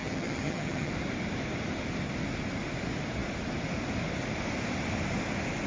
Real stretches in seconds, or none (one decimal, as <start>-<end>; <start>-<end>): 0.9-5.7